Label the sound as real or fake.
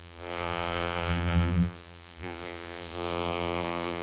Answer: fake